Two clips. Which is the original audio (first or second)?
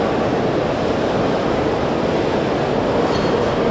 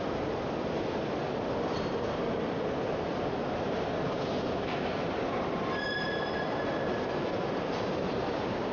first